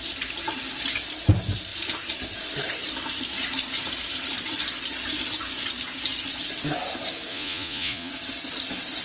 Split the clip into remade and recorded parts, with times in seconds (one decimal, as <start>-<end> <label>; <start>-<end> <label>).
0.0-7.3 recorded; 7.3-8.1 remade; 8.1-9.0 recorded